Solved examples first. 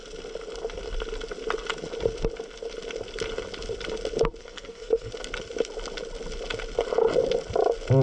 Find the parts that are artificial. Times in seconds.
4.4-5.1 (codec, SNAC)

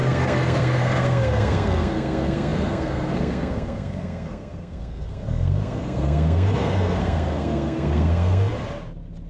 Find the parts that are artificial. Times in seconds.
0.0-8.5 (codec, SNAC)

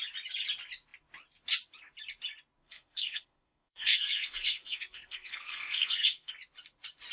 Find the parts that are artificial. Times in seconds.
2.6-6.3 (codec, SNAC)

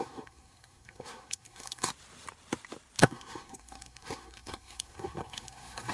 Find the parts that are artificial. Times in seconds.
0.0-1.9 (codec, SNAC); 3.0-5.9

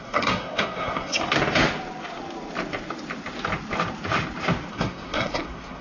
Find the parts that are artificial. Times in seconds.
0.0-1.2 (codec, SNAC); 4.7-5.8

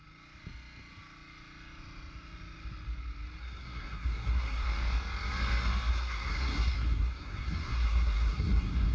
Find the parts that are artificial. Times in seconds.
3.4-4.7 (codec, SNAC); 5.9-8.9